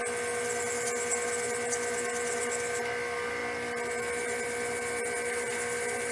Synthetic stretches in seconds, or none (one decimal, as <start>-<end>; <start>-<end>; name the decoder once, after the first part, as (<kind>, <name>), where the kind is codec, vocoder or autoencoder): none